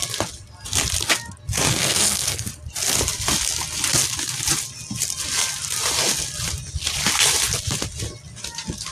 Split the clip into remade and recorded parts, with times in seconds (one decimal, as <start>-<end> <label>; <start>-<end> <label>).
0.0-1.7 recorded; 1.7-2.5 remade; 2.5-8.9 recorded